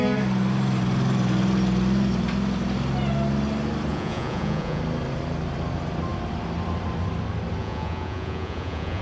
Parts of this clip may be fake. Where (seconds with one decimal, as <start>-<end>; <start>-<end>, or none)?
3.9-4.8; 7.6-9.0